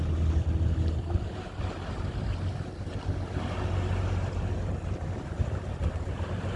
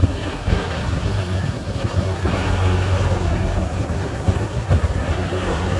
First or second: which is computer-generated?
second